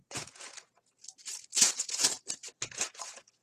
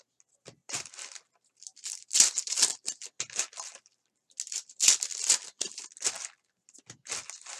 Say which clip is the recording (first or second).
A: second